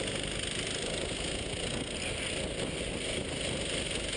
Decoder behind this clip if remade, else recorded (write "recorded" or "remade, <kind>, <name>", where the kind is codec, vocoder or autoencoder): recorded